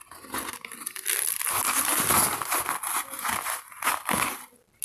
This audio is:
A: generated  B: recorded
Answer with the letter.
B